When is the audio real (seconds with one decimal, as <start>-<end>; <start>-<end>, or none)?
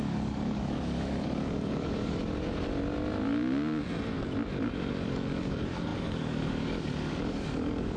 2.2-4.9